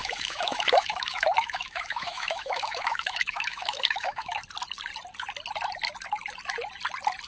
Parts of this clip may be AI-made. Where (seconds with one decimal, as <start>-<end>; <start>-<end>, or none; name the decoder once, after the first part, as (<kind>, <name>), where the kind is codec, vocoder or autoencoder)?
0.0-4.4 (autoencoder, DAC-VAE)